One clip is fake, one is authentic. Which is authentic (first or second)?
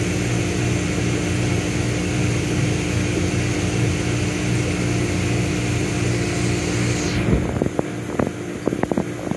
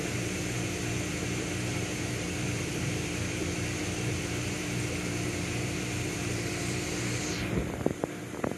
first